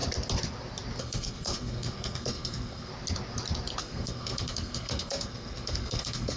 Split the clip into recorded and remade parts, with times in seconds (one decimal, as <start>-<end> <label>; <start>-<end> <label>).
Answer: 0.0-1.0 recorded; 1.0-2.9 remade; 2.9-3.8 recorded; 3.8-6.4 remade